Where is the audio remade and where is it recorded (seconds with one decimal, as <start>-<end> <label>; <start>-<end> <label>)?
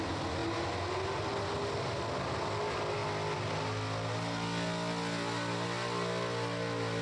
0.0-7.0 recorded